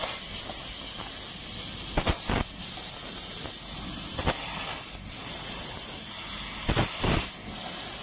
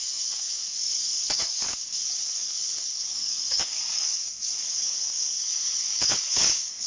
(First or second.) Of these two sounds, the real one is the first